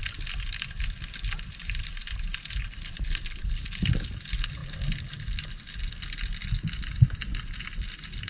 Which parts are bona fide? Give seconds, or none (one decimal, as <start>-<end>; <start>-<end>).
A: 0.0-8.3